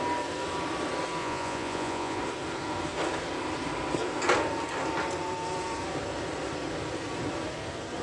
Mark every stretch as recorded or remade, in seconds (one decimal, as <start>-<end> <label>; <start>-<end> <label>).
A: 0.0-1.2 recorded; 1.2-2.2 remade; 2.2-8.0 recorded

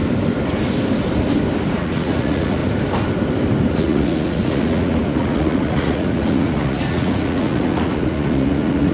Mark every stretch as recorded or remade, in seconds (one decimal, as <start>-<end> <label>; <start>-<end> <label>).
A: 0.0-1.7 recorded; 1.7-2.6 remade; 2.6-3.6 recorded; 3.6-8.9 remade

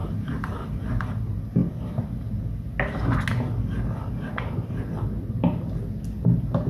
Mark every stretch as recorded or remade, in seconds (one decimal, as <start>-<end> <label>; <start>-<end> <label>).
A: 0.0-1.1 remade; 1.1-6.7 recorded

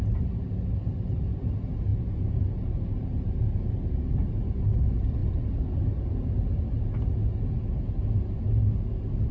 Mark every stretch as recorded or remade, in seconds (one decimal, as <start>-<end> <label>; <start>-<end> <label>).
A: 0.0-9.3 recorded